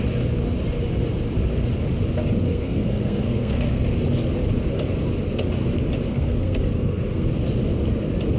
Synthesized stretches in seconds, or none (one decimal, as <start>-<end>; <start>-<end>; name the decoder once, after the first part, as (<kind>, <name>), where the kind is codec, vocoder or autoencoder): 2.5-3.8 (codec, SNAC); 6.1-7.3